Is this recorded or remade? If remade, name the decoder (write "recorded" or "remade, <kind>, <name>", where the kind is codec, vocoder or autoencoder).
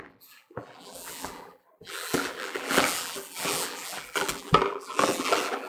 remade, vocoder, BigVGAN v2